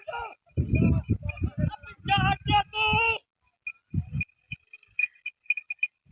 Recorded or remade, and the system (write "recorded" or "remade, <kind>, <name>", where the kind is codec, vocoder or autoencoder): recorded